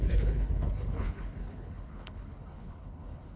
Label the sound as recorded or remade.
remade